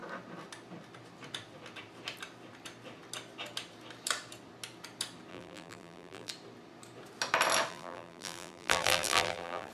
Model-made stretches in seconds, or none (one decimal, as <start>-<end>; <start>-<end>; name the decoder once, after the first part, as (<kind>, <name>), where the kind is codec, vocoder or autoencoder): 5.3-6.3 (vocoder, BigVGAN v2); 7.7-9.7